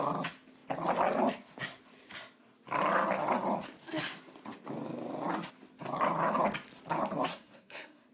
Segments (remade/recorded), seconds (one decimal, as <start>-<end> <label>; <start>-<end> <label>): 0.0-7.3 recorded; 7.3-8.1 remade